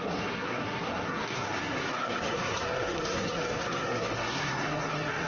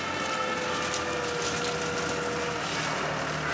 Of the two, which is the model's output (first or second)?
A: first